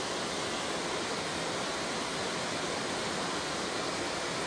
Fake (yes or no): no